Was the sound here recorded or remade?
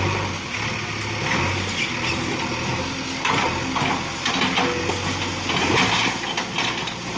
recorded